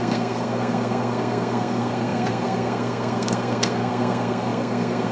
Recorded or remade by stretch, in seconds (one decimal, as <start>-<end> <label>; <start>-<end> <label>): 0.0-5.1 remade